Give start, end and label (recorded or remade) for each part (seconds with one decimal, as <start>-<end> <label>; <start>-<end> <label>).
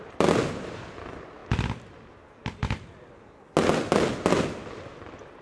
0.0-1.4 remade; 1.4-4.6 recorded; 4.6-5.4 remade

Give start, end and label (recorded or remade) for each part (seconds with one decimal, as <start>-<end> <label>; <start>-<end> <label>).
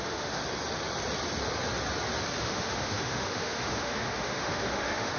0.0-0.4 remade; 0.4-2.4 recorded; 2.4-5.2 remade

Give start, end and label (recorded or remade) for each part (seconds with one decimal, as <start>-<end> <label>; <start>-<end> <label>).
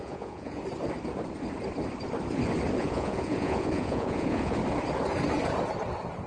0.0-0.6 remade; 0.6-2.8 recorded; 2.8-4.6 remade; 4.6-6.3 recorded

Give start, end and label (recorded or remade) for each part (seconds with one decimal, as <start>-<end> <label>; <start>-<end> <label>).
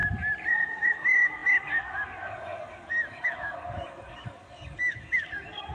0.0-0.5 recorded; 0.5-5.7 remade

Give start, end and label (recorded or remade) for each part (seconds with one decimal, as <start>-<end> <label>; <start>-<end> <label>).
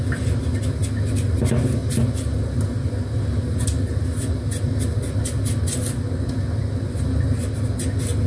0.0-8.3 recorded